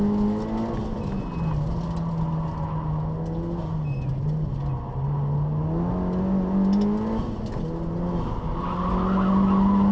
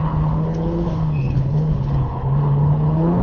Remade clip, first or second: second